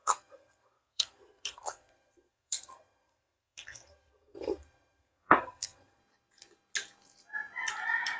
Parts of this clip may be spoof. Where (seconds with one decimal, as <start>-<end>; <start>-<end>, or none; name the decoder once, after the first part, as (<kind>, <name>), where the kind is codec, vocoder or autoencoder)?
0.0-6.0 (codec, SNAC)